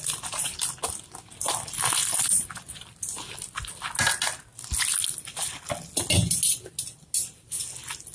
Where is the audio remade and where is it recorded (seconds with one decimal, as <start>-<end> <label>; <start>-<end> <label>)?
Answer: 0.0-8.1 recorded